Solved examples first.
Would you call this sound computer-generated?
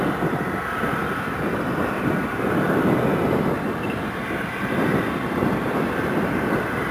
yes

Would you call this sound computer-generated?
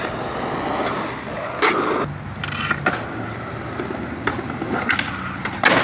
no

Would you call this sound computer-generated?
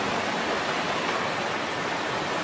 no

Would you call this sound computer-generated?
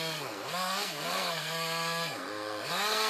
yes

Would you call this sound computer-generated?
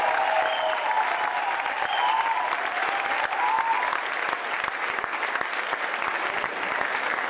no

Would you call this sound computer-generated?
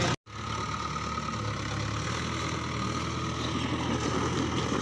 no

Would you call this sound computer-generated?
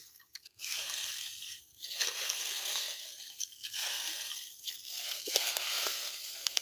yes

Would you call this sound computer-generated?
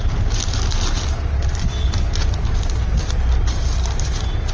no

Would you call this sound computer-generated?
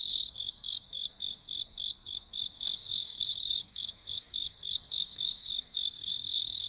yes